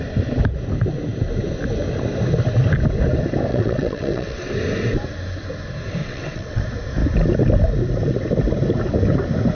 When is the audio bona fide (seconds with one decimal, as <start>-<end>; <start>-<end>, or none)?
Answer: 0.0-3.5; 4.5-6.0; 6.6-9.5